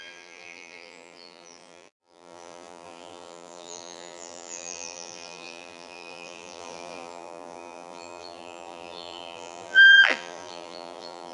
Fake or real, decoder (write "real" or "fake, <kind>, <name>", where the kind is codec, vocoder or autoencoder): fake, vocoder, BigVGAN v2